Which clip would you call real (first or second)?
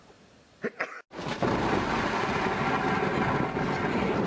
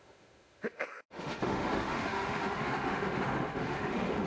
first